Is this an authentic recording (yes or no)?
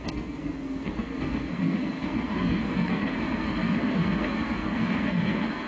no